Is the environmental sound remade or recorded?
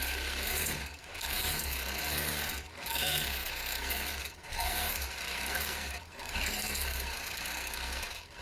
remade